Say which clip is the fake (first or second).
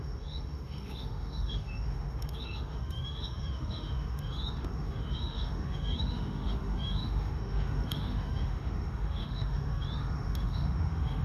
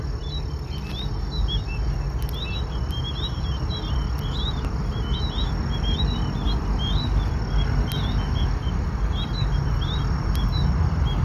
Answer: first